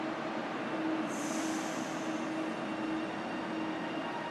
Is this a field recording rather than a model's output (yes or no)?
yes